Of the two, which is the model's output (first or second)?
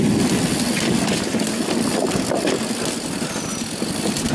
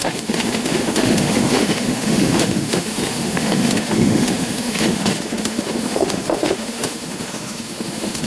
second